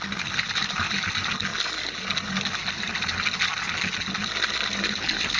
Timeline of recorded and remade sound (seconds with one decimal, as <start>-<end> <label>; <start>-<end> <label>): 0.0-5.4 recorded